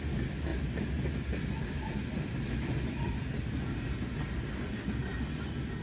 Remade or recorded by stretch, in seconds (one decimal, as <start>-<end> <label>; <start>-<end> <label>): 0.0-5.8 recorded

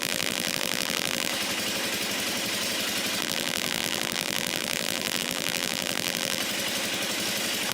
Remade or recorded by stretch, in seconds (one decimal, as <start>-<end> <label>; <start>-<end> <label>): 0.0-1.3 remade; 1.3-3.2 recorded; 3.2-6.4 remade; 6.4-7.7 recorded

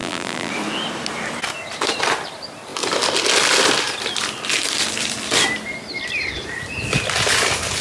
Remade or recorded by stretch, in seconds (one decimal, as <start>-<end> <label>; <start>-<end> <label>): 0.0-0.5 remade; 0.5-7.8 recorded

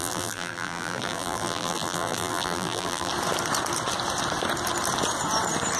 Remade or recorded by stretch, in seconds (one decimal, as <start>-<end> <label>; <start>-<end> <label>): 0.0-3.1 remade; 3.1-5.8 recorded

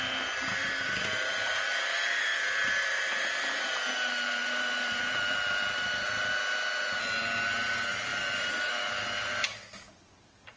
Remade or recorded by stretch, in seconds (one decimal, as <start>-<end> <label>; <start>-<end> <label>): 0.0-0.6 recorded; 0.6-3.6 remade; 3.6-4.4 recorded; 4.4-6.3 remade; 6.3-8.1 recorded; 8.1-8.7 remade; 8.7-10.6 recorded

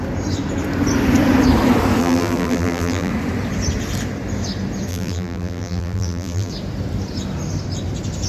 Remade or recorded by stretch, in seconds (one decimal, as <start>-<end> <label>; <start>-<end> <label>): 0.0-2.0 recorded; 2.0-3.1 remade; 3.1-4.9 recorded; 4.9-6.5 remade; 6.5-8.3 recorded

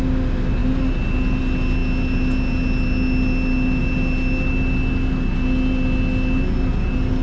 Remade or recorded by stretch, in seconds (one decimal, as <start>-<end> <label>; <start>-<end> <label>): 0.0-7.2 recorded